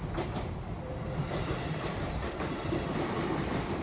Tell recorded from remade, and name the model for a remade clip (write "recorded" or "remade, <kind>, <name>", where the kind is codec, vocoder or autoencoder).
recorded